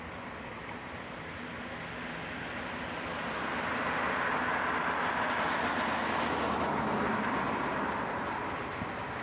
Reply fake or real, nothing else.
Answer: real